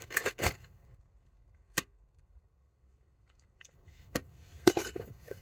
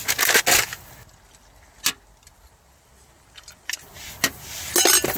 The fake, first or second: first